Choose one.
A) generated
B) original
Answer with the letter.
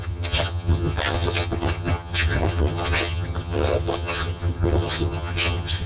A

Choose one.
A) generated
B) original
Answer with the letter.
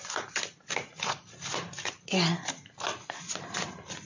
B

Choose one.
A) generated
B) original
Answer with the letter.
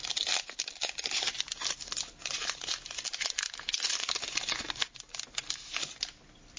B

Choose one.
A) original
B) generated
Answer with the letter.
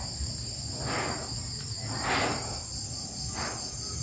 A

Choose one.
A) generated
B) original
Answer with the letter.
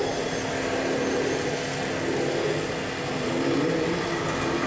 B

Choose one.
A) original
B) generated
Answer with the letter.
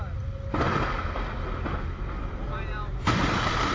A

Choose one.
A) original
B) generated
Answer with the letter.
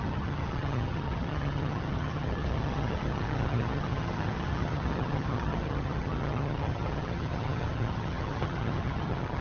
B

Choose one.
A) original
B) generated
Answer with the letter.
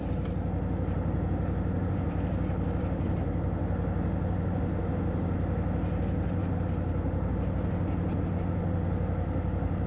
A